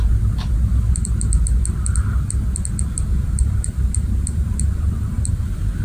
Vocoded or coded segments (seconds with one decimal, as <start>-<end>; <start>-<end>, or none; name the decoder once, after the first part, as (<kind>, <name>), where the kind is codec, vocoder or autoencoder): 3.1-5.2 (vocoder, BigVGAN v2)